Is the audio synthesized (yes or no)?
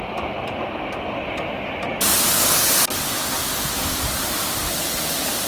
no